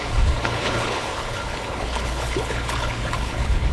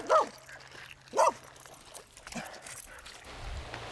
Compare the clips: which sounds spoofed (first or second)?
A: first